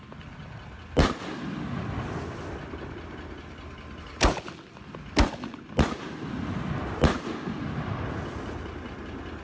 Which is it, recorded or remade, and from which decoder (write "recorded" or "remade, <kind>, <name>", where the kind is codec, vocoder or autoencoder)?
recorded